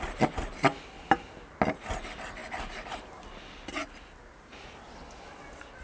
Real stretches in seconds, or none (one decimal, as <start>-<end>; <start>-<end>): 0.0-5.8